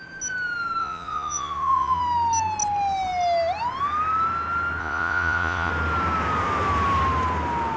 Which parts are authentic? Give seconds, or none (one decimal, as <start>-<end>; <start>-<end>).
0.0-0.8; 2.0-4.8; 5.7-7.8